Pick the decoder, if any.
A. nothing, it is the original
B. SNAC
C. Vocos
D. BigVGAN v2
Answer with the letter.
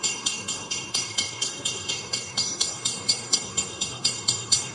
B